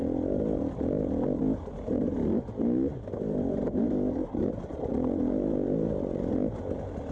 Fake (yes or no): no